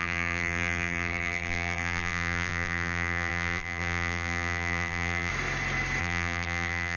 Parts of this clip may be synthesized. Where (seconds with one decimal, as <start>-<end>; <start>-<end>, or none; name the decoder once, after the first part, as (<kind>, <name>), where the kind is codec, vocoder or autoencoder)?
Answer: 0.0-5.3 (vocoder, BigVGAN v2); 6.0-7.0